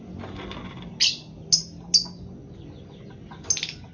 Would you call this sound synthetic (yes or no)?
no